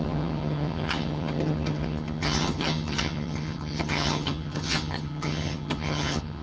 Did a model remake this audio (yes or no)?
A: yes